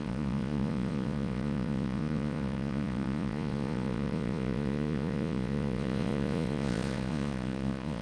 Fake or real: fake